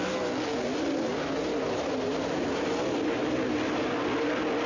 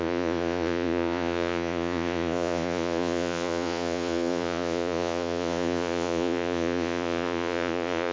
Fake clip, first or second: second